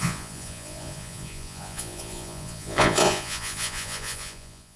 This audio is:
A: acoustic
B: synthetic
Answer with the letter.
B